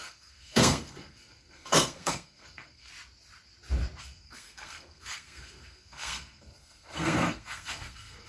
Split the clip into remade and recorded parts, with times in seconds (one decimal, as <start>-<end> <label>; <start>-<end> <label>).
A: 0.0-2.9 remade; 2.9-4.0 recorded; 4.0-8.3 remade